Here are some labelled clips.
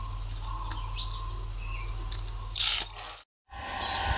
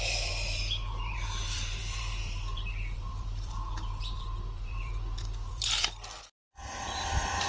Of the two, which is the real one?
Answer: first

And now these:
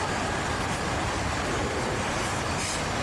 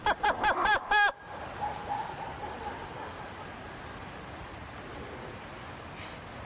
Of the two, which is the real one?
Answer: second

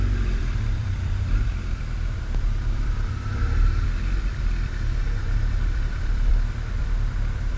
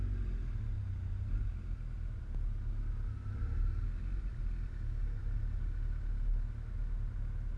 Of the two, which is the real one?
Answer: second